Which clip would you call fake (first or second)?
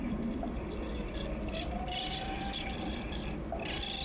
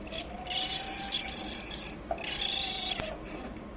first